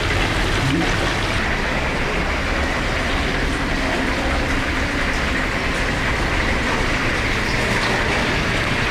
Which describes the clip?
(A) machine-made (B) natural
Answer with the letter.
B